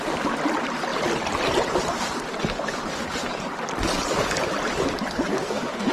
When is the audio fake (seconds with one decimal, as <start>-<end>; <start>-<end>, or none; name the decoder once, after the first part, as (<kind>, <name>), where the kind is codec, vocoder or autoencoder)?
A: 5.3-5.9 (codec, SNAC)